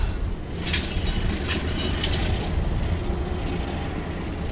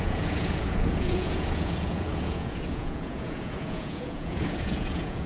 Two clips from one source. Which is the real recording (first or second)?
first